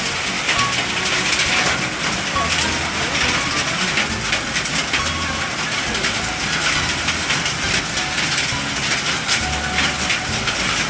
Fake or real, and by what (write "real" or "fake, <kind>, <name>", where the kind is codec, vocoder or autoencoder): real